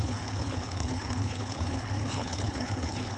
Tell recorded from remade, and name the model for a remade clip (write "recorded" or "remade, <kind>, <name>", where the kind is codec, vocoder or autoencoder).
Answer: remade, codec, HILCodec